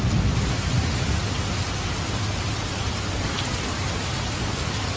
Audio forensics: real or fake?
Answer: real